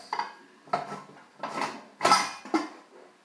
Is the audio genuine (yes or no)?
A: yes